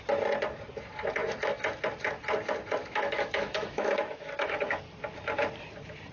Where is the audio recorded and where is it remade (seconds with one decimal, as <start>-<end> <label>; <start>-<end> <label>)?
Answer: 0.0-1.2 recorded; 1.2-1.8 remade; 1.8-2.8 recorded; 2.8-4.8 remade; 4.8-6.1 recorded